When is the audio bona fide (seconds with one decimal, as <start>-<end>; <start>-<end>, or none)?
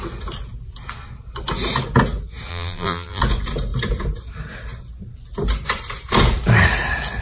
0.0-2.5; 3.2-7.2